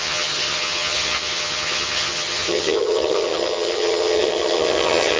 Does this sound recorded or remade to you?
remade